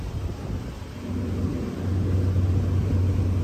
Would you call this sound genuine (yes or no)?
yes